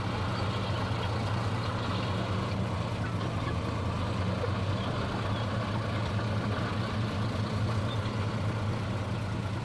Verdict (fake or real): real